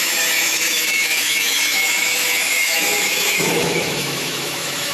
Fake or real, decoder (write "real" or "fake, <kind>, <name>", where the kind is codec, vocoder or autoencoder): fake, autoencoder, DAC-VAE